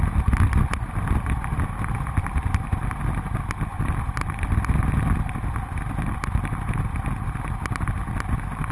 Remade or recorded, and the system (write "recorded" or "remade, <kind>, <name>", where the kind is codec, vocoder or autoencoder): recorded